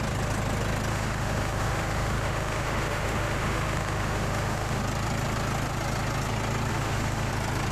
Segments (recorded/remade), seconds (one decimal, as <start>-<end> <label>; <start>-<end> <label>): 0.0-0.9 recorded; 0.9-4.8 remade; 4.8-6.7 recorded; 6.7-7.3 remade; 7.3-7.7 recorded